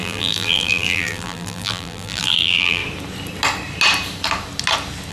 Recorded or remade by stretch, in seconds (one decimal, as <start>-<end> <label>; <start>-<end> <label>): 0.0-2.8 remade; 2.8-5.1 recorded